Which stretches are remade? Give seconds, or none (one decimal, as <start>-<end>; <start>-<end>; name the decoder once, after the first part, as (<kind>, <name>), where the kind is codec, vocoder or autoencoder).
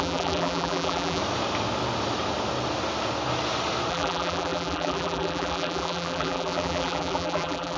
0.0-1.2 (vocoder, BigVGAN v2); 3.9-7.8